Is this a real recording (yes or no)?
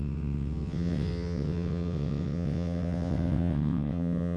no